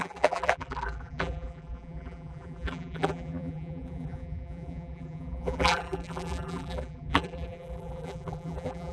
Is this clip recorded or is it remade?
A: remade